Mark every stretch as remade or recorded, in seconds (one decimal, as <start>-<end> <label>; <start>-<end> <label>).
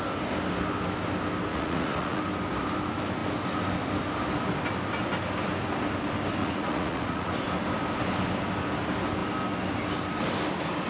0.0-1.5 recorded; 1.5-2.2 remade; 2.2-6.4 recorded; 6.4-7.3 remade; 7.3-10.9 recorded